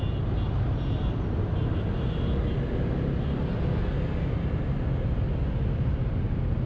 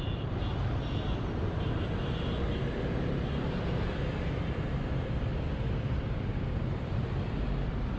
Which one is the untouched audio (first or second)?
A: first